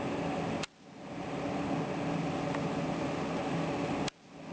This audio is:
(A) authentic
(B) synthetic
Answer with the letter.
B